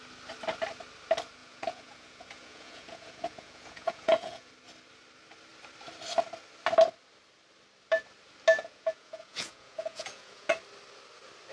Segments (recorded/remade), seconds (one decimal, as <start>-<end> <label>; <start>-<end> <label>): 0.0-1.4 recorded; 1.4-4.5 remade; 4.5-8.6 recorded; 8.6-10.5 remade; 10.5-11.5 recorded